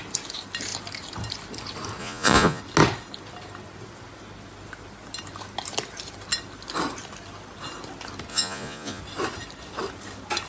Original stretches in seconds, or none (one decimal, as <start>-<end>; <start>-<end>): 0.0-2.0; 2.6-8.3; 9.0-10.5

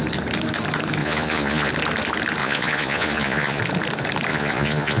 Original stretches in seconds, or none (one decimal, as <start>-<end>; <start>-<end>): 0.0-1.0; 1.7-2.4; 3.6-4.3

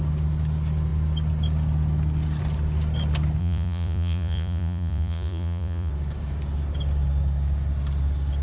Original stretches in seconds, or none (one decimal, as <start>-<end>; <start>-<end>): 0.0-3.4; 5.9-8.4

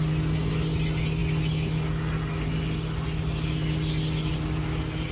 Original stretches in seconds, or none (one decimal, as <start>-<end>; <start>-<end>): 0.0-5.1

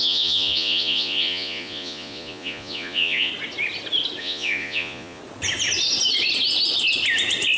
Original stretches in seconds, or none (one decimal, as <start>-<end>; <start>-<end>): 3.3-4.2; 5.2-7.6